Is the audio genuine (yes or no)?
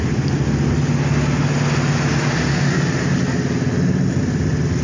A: yes